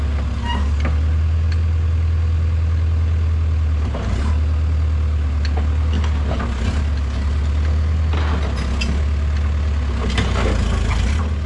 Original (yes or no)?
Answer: yes